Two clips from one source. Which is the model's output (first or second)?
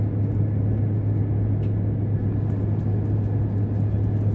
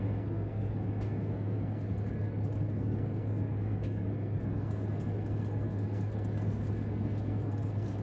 second